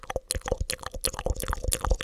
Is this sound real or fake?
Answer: real